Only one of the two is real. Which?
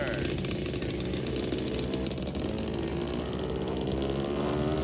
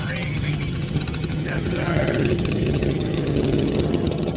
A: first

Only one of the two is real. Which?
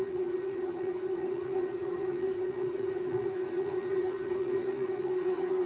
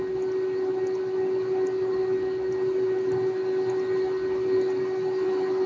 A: second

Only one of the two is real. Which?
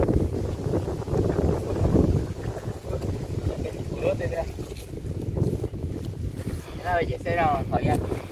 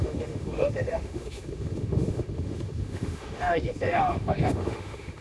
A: first